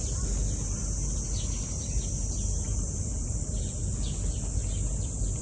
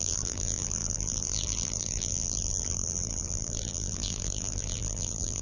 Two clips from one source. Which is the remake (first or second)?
second